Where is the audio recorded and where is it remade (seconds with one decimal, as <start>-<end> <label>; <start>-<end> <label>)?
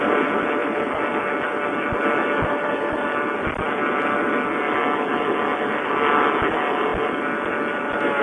0.0-8.2 recorded